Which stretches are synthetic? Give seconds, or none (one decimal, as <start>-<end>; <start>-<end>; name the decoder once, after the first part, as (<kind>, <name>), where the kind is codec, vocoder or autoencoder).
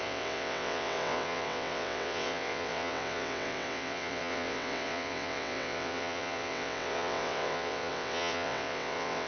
0.0-9.3 (vocoder, WaveNeXt)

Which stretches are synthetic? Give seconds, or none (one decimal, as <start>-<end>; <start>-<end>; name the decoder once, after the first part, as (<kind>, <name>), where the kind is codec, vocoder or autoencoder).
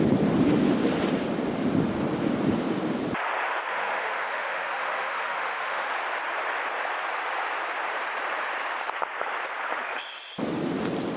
3.7-5.9 (autoencoder, DAC-VAE)